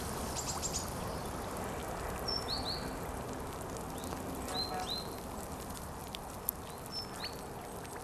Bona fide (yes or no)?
yes